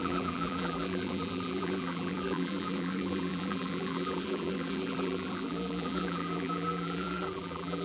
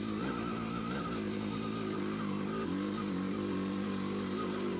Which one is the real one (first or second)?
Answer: second